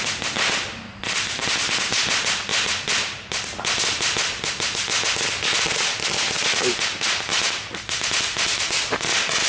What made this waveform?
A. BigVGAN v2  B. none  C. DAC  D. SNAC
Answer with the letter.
B